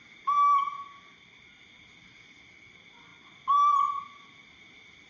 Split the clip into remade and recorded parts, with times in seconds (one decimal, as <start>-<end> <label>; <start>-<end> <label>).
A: 0.0-5.1 recorded